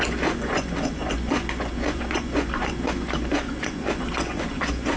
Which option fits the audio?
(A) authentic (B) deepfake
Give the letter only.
B